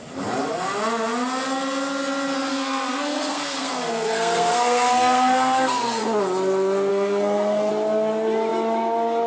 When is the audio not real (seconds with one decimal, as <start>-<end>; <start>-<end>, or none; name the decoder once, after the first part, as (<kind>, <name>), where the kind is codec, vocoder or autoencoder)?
2.5-6.0 (codec, SNAC); 6.9-7.7

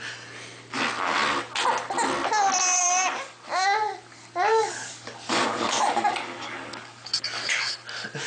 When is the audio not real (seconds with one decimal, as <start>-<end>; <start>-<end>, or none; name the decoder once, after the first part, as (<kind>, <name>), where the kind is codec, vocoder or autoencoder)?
4.5-7.7 (codec, DAC)

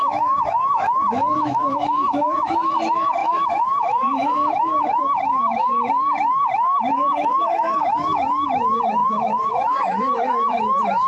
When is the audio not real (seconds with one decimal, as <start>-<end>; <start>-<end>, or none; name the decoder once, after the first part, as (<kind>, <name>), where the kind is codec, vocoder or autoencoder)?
0.0-11.1 (autoencoder, DAC-VAE)

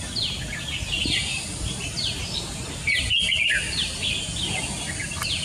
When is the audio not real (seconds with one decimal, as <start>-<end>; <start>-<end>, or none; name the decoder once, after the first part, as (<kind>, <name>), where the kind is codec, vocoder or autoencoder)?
none

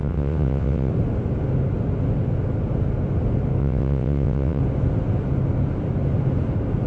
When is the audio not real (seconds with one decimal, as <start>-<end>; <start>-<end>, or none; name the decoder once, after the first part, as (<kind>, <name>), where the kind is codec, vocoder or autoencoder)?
0.0-0.9 (vocoder, WaveNeXt); 3.6-4.6

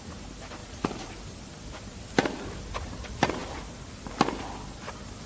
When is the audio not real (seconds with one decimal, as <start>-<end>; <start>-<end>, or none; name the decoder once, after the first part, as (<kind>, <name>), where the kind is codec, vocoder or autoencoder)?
0.6-1.1 (vocoder, Vocos)

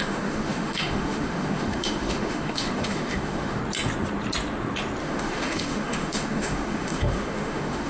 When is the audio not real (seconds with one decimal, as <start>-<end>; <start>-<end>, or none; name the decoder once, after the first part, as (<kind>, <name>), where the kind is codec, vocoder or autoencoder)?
0.0-3.6 (autoencoder, DAC-VAE); 5.0-7.9